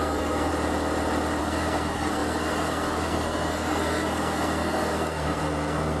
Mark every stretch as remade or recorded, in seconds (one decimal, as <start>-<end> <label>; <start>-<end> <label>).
0.0-0.5 remade; 0.5-1.4 recorded; 1.4-6.0 remade